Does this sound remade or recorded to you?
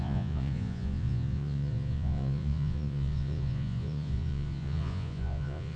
remade